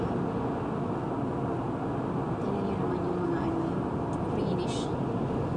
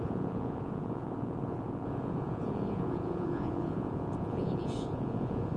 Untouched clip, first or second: first